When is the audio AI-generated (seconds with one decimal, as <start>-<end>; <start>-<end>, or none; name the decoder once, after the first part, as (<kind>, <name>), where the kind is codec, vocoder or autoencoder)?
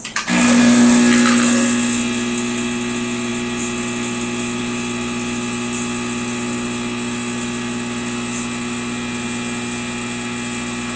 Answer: none